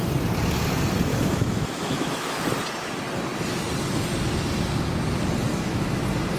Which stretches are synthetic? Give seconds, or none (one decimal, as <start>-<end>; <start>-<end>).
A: 1.1-2.4; 5.5-6.0